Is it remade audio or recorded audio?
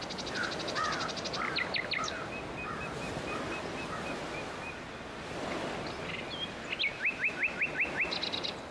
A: recorded